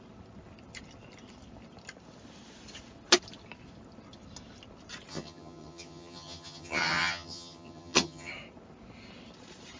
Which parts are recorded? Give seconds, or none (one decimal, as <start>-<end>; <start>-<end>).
0.0-5.1; 8.3-9.8